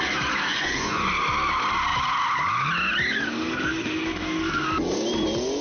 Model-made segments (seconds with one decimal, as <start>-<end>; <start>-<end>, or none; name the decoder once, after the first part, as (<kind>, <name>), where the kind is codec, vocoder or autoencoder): 0.5-1.1 (vocoder, Vocos)